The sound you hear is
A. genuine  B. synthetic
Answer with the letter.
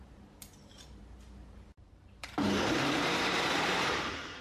B